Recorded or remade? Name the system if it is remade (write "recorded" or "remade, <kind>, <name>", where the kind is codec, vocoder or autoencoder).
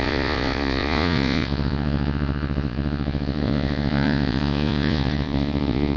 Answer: remade, vocoder, Vocos